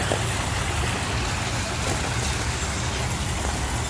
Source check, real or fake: real